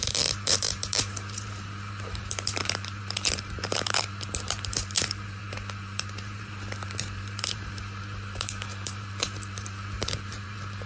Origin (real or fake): fake